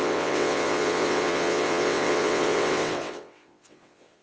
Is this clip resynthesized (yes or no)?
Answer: yes